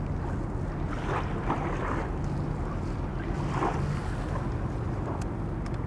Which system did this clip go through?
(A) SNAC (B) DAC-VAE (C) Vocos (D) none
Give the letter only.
D